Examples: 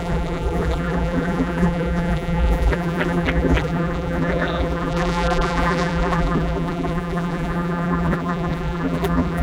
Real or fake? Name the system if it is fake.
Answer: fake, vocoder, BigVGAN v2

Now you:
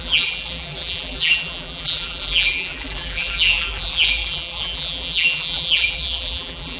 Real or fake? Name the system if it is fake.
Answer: fake, vocoder, BigVGAN v2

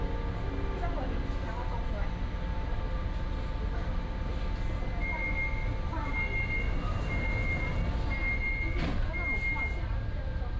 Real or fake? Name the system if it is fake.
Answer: real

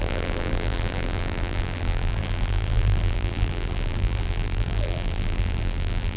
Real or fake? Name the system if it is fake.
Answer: fake, vocoder, BigVGAN v2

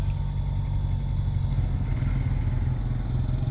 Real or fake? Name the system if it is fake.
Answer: real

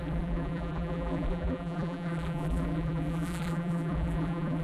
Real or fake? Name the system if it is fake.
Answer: fake, vocoder, BigVGAN v2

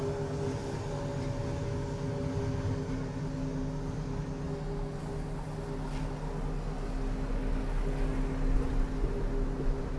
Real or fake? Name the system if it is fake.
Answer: real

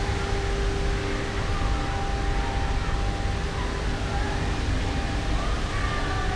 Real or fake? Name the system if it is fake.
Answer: real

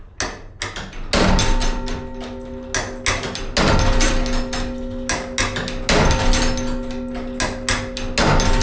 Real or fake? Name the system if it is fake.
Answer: real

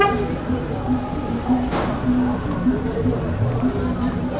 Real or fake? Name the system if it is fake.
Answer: real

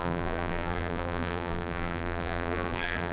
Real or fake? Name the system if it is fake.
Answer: fake, vocoder, BigVGAN v2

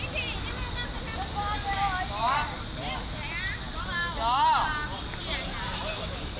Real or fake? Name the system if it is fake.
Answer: real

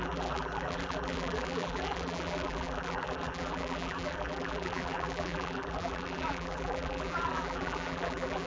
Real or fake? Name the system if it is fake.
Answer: fake, vocoder, BigVGAN v2